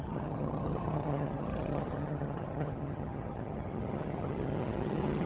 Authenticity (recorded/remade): remade